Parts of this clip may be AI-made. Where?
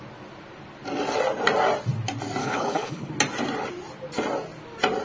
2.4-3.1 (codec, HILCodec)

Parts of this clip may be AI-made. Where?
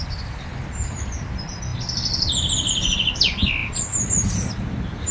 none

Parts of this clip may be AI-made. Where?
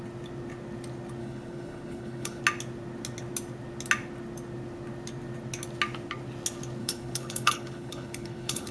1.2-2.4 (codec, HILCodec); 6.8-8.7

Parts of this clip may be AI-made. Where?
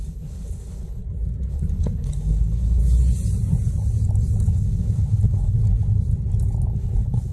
0.0-1.0 (codec, HILCodec); 1.5-2.8; 4.5-5.6; 6.7-7.3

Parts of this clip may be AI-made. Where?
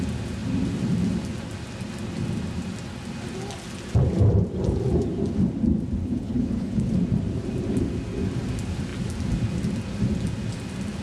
6.0-6.9 (codec, HILCodec)